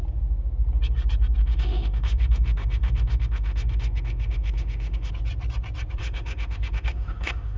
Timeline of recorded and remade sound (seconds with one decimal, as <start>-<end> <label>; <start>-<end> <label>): 0.0-1.4 recorded; 1.4-5.1 remade; 5.1-6.0 recorded; 6.0-7.6 remade